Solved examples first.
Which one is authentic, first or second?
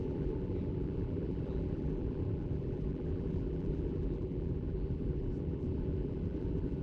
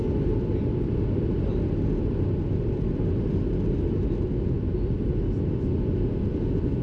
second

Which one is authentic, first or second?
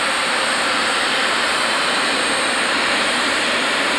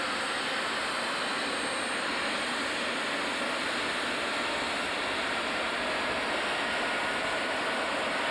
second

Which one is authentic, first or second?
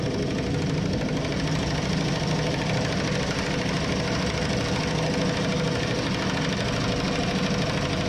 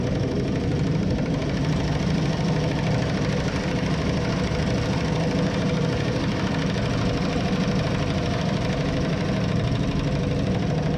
first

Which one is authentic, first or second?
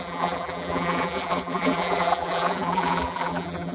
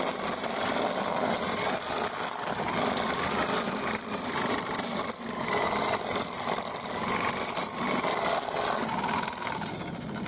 second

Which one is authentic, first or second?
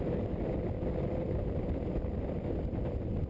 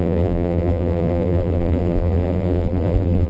first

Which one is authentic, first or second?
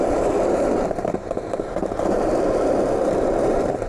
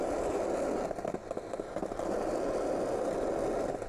second